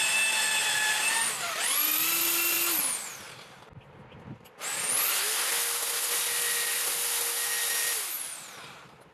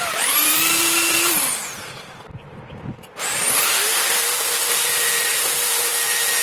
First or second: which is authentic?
first